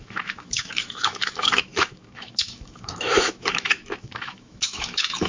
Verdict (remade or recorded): remade